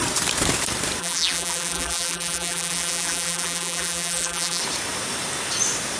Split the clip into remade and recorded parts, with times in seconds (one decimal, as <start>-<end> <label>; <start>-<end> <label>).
0.0-1.0 recorded; 1.0-4.6 remade; 4.6-6.0 recorded